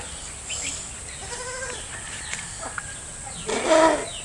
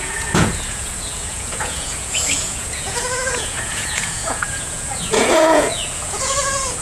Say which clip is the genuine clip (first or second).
first